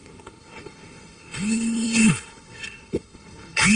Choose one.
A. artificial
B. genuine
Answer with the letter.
A